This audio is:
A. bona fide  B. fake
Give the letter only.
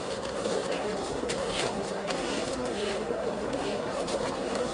B